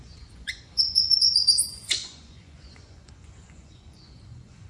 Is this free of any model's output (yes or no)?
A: no